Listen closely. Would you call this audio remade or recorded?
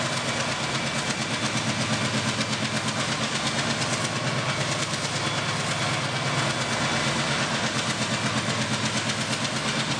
recorded